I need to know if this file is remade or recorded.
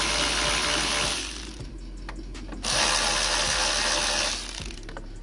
recorded